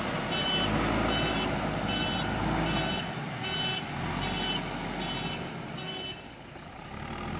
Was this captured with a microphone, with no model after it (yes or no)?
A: yes